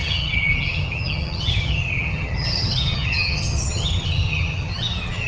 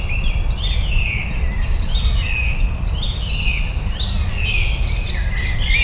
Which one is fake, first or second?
first